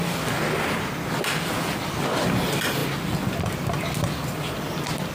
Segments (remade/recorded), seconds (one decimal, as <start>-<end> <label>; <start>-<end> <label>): 0.0-5.1 recorded